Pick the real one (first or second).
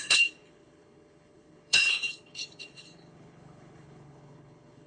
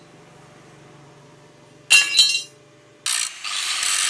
second